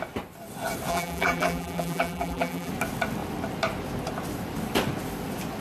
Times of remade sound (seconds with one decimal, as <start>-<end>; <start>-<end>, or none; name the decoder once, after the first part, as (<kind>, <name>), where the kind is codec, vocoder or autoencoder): 0.9-2.7 (vocoder, BigVGAN v2)